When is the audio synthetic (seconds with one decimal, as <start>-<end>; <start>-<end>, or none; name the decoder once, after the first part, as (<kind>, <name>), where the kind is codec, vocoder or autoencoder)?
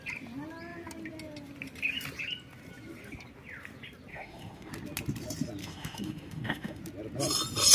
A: 4.1-4.7 (autoencoder, DAC-VAE); 5.6-6.8